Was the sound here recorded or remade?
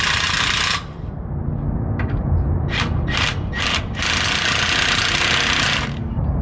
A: recorded